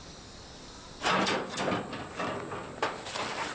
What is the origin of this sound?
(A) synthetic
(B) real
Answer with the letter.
B